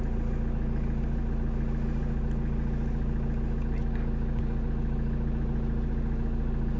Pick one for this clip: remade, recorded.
recorded